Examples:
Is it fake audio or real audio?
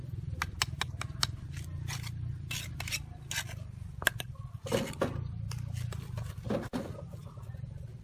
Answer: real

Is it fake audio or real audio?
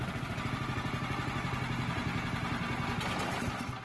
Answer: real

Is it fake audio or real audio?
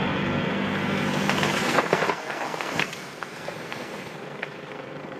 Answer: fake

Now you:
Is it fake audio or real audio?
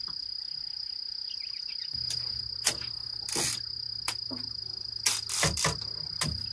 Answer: real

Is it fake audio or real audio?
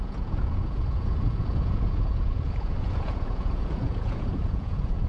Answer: fake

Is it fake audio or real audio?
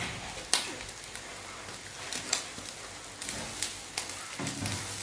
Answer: real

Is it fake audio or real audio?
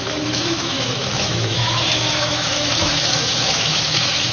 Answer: fake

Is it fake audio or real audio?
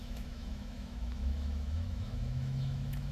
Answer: fake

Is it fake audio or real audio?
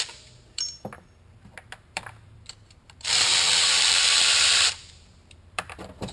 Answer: fake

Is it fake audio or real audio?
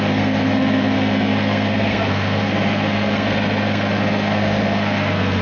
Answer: fake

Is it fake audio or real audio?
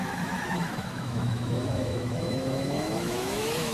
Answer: fake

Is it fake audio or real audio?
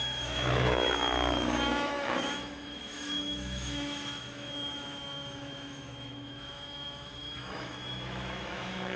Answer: fake